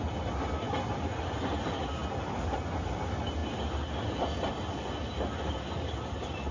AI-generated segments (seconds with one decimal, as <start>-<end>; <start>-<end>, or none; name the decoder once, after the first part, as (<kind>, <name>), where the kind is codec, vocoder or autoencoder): none